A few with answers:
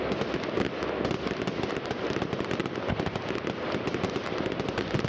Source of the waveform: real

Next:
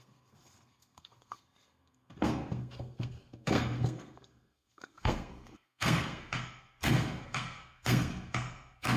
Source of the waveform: fake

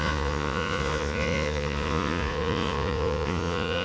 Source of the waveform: fake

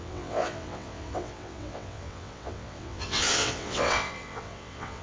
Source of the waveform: fake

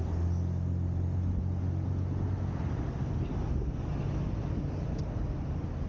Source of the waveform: real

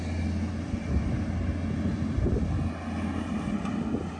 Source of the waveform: real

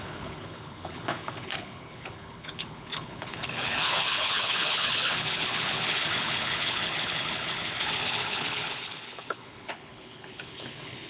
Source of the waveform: fake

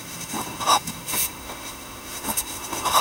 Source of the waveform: fake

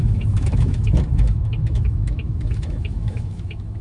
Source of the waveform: fake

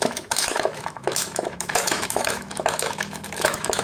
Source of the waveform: fake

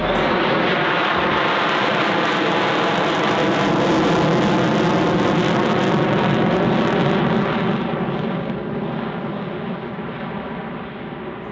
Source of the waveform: real